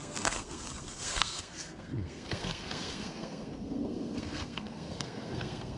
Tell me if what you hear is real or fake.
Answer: fake